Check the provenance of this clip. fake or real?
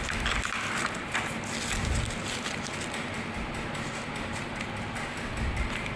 real